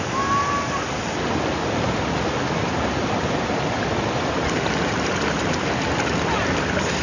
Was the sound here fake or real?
real